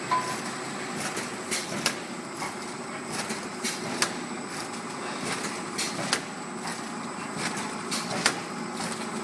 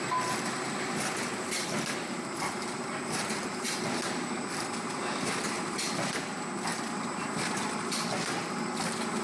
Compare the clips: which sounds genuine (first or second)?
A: first